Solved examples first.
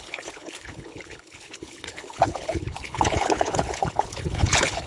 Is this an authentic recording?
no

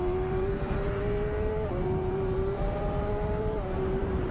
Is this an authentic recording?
no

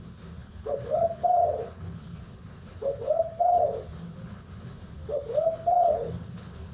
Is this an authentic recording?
no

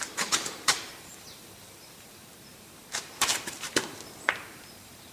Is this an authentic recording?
no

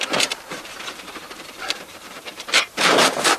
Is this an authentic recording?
no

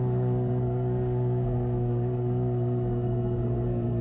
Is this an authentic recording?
no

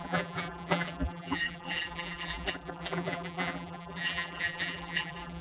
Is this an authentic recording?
no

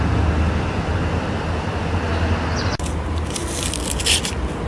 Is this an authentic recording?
yes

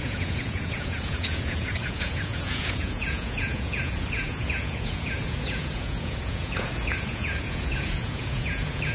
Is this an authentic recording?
no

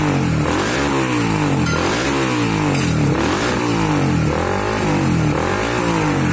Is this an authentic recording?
yes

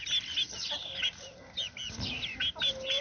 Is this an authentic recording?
yes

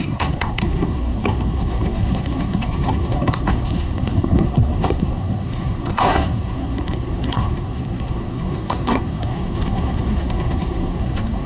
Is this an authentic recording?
no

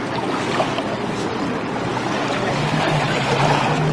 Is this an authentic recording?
yes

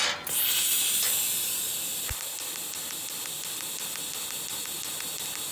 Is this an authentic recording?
yes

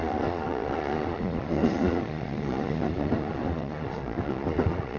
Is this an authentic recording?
no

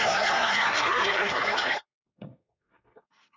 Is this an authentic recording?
no